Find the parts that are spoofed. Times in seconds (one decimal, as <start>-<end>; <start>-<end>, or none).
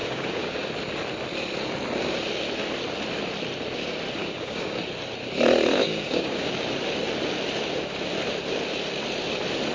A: 0.0-0.6; 4.2-4.8; 5.7-6.5